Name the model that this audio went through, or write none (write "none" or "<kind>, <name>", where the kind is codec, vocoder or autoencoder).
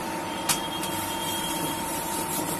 vocoder, BigVGAN v2